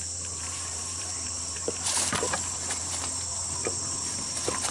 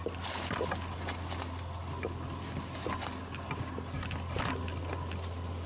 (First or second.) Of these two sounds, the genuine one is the second